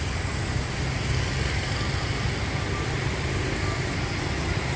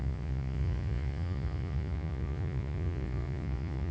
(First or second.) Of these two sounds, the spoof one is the second